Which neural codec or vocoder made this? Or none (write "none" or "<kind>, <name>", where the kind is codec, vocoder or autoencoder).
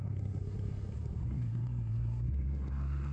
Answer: codec, SNAC